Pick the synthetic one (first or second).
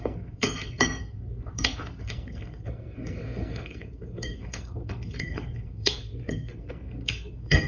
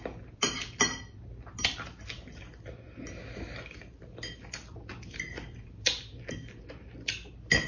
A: first